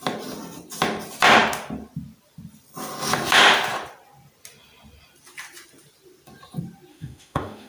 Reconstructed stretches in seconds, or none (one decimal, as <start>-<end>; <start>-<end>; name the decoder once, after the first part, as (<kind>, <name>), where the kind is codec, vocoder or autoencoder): 6.9-7.7 (autoencoder, DAC-VAE)